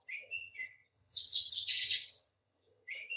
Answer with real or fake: fake